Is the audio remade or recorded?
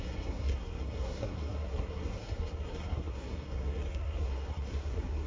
remade